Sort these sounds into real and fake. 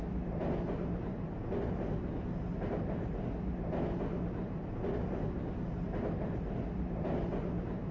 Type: real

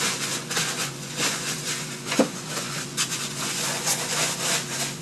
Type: fake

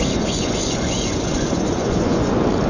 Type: fake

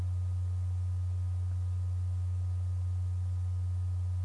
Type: real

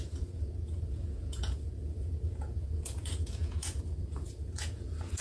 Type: fake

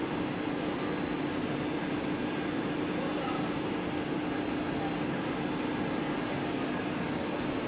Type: real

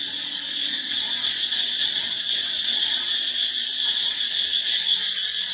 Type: fake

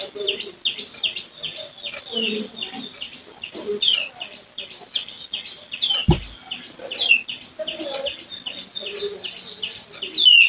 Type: real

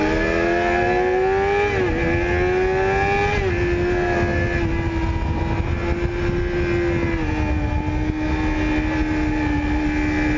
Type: real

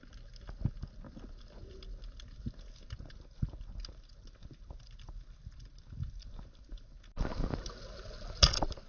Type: real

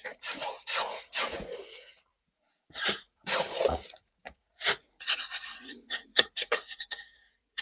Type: fake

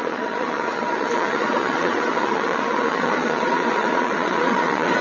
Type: fake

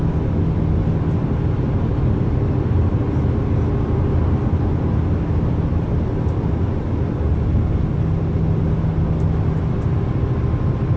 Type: real